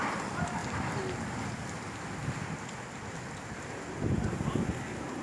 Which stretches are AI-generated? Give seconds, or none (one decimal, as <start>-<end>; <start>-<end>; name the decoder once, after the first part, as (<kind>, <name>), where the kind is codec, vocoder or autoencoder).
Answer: none